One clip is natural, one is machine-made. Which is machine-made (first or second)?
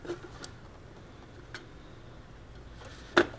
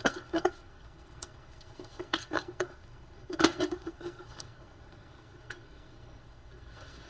second